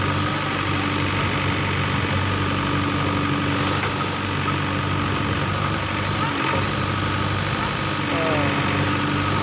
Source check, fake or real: real